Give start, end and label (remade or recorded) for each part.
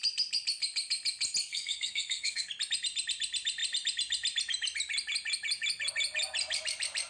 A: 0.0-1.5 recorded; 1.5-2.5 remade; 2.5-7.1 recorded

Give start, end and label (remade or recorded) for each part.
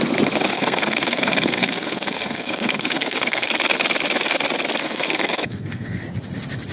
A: 0.0-0.5 recorded; 0.5-3.5 remade; 3.5-4.8 recorded; 4.8-6.0 remade; 6.0-6.7 recorded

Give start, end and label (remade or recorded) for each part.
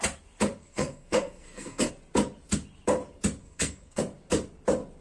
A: 0.0-0.6 recorded; 0.6-1.9 remade; 1.9-3.4 recorded; 3.4-4.0 remade; 4.0-5.0 recorded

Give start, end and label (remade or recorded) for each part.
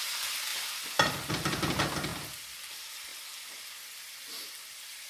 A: 0.0-5.1 recorded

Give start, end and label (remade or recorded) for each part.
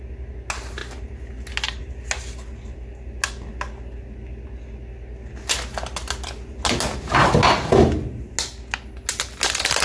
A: 0.0-9.8 recorded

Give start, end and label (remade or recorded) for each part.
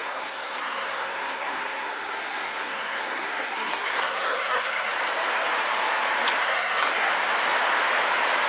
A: 0.0-4.9 remade; 4.9-6.4 recorded; 6.4-7.1 remade; 7.1-8.5 recorded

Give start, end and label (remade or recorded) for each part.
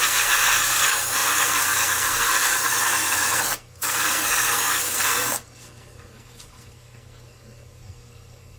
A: 0.0-8.6 remade